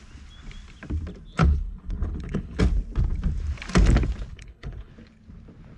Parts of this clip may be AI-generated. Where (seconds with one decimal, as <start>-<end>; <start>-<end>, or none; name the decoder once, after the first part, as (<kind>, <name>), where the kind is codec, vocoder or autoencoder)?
1.4-2.6 (codec, HILCodec); 4.3-4.9